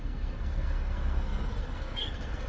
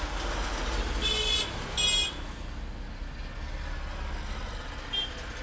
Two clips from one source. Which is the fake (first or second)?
first